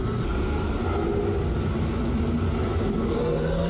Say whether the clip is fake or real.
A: real